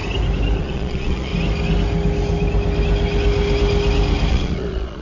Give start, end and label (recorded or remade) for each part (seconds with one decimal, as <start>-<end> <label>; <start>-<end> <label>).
0.0-0.6 recorded; 0.6-1.3 remade; 1.3-4.3 recorded; 4.3-5.0 remade